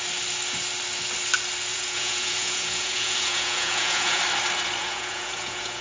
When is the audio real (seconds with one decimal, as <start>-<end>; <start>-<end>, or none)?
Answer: 0.0-1.7; 4.2-4.8